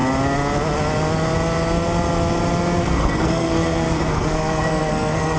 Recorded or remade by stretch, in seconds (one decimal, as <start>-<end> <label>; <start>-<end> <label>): 0.0-2.8 recorded; 2.8-5.4 remade